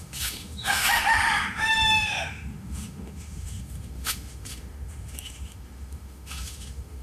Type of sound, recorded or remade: remade